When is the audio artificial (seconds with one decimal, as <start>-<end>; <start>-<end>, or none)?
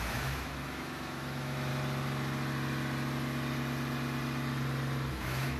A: 0.0-1.7; 5.1-5.6